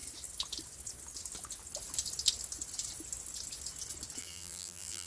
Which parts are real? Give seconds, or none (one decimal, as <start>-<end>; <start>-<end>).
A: 0.0-4.2